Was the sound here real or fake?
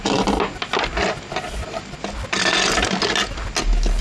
real